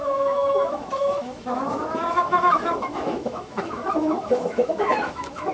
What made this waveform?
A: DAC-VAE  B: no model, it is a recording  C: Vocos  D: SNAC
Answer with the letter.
A